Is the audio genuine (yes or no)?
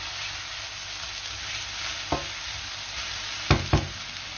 yes